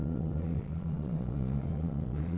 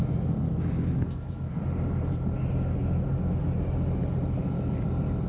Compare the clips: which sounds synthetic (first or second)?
first